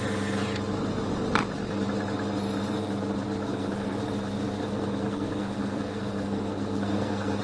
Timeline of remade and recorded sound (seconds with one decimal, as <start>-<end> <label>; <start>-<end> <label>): 0.0-3.4 recorded; 3.4-4.0 remade; 4.0-4.6 recorded; 4.6-7.4 remade